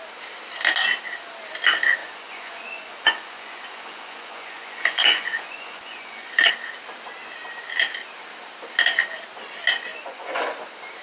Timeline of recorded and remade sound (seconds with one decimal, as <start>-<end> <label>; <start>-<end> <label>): 0.0-2.0 recorded; 2.0-6.5 remade; 6.5-9.9 recorded; 9.9-10.4 remade; 10.4-11.0 recorded